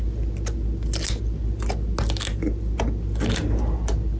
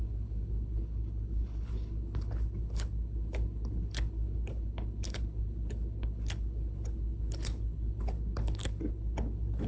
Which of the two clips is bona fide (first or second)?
first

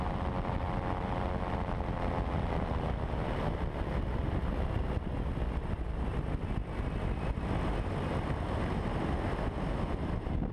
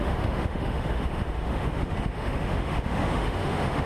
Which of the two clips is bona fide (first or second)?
first